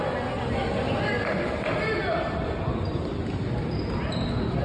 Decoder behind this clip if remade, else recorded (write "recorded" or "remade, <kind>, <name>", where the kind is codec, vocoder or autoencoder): recorded